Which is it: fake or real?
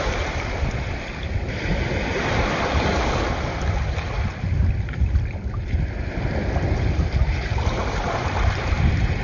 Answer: real